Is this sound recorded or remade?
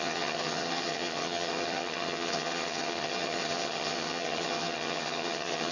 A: remade